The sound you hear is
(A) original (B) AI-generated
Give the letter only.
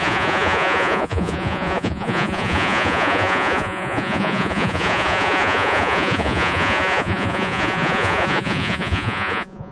B